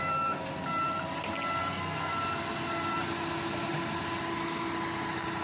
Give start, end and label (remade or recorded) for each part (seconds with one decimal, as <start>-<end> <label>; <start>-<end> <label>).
0.0-1.6 recorded; 1.6-2.1 remade; 2.1-5.4 recorded

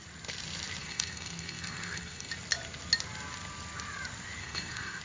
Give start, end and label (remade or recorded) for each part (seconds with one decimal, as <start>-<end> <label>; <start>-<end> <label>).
0.0-0.8 recorded; 0.8-2.3 remade; 2.3-4.4 recorded; 4.4-5.0 remade

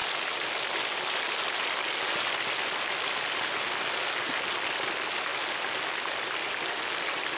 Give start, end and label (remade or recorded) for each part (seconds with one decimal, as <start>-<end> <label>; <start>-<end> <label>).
0.0-7.4 recorded

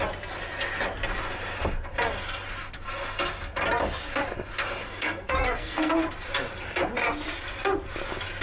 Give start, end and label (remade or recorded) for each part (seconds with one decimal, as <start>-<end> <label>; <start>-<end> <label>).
0.0-4.8 recorded; 4.8-5.9 remade; 5.9-8.4 recorded

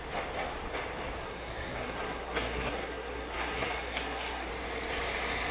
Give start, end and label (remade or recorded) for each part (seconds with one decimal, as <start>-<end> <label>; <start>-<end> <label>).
0.0-1.2 recorded; 1.2-4.5 remade; 4.5-5.5 recorded

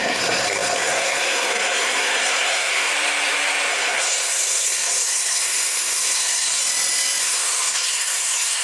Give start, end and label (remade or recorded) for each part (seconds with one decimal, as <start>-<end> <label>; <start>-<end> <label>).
0.0-2.9 remade; 2.9-3.7 recorded; 3.7-6.6 remade; 6.6-7.2 recorded; 7.2-8.6 remade

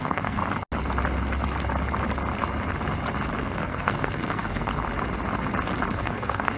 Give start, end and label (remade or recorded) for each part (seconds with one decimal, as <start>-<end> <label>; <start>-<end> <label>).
0.0-0.4 remade; 0.4-3.4 recorded; 3.4-4.7 remade; 4.7-5.9 recorded; 5.9-6.6 remade